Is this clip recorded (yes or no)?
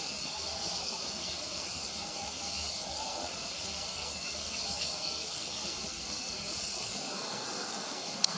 no